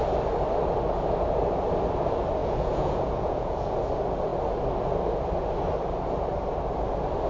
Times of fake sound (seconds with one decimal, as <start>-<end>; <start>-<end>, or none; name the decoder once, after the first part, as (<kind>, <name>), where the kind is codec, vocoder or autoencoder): 2.4-3.7 (vocoder, Vocos)